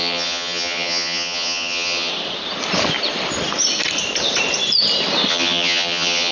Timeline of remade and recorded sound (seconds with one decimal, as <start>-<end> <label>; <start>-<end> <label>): 0.0-2.1 remade; 2.1-5.3 recorded; 5.3-6.3 remade